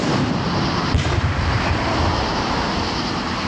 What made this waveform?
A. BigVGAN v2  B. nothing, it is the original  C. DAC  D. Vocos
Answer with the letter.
A